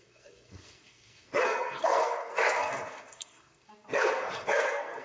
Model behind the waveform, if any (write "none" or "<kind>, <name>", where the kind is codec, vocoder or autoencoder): codec, SNAC